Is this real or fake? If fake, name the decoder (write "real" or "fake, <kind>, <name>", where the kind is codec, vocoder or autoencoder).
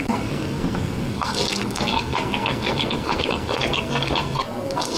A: fake, codec, SNAC